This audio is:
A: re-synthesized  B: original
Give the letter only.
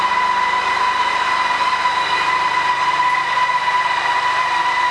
B